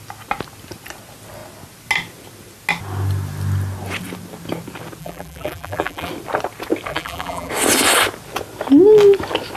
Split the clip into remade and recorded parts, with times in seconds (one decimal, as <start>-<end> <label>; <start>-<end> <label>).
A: 0.0-5.0 recorded; 5.0-6.1 remade; 6.1-6.9 recorded; 6.9-7.5 remade; 7.5-9.6 recorded